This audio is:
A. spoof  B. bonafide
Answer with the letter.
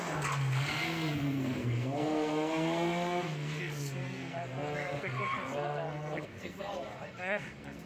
A